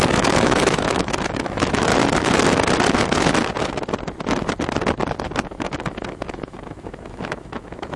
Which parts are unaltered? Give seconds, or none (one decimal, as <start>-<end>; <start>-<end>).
1.9-5.4